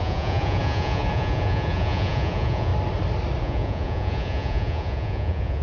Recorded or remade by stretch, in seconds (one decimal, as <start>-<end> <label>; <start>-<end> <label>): 0.0-2.7 remade; 2.7-3.4 recorded; 3.4-5.6 remade